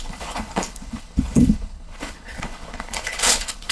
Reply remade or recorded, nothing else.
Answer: remade